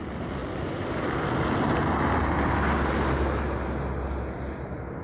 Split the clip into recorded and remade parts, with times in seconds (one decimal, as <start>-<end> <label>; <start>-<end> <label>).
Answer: 0.0-5.0 recorded